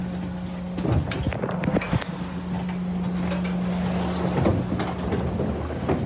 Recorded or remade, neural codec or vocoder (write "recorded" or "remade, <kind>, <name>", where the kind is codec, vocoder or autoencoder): recorded